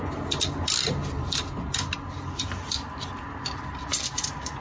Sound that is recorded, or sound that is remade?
recorded